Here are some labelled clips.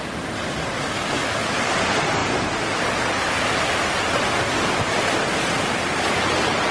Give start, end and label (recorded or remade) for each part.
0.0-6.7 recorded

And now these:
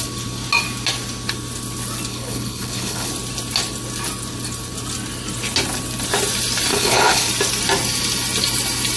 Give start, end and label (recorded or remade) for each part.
0.0-2.1 recorded; 2.1-3.1 remade; 3.1-6.7 recorded; 6.7-7.3 remade; 7.3-9.0 recorded